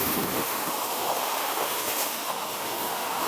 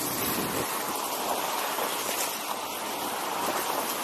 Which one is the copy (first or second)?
first